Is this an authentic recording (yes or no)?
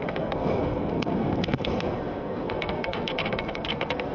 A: no